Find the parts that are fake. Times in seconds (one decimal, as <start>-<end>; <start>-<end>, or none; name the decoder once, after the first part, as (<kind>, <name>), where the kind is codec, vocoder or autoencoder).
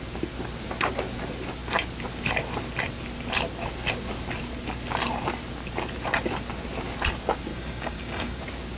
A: 7.5-8.4 (codec, DAC)